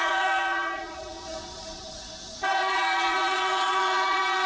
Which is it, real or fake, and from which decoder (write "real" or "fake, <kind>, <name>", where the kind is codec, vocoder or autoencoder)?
fake, vocoder, Vocos